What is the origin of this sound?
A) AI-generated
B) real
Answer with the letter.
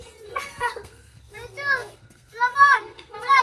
A